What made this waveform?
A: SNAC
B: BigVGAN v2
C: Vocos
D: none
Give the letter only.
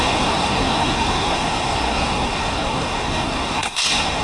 A